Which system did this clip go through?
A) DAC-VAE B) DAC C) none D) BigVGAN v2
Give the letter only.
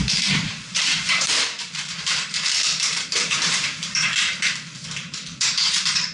D